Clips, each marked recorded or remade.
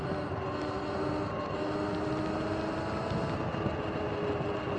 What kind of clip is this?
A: recorded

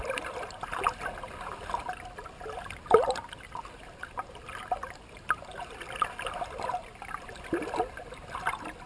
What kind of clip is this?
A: recorded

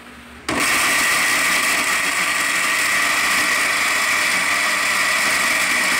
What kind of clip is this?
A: recorded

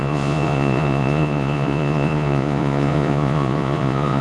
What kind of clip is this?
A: remade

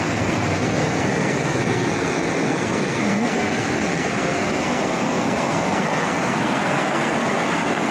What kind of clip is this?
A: remade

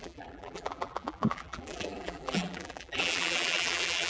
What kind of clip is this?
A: remade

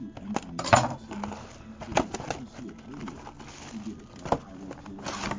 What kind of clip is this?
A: recorded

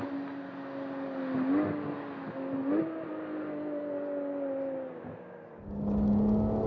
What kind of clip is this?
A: recorded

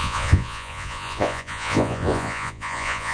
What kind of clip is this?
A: remade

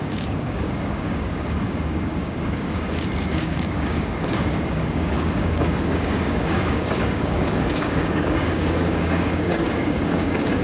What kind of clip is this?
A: remade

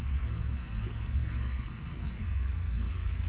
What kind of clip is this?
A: remade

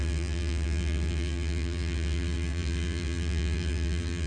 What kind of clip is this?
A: remade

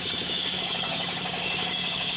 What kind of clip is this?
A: remade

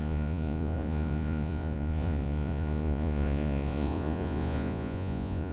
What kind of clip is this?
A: remade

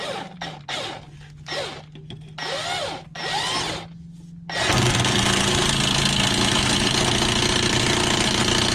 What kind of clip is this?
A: recorded